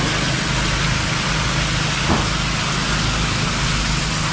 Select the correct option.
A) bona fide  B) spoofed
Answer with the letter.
A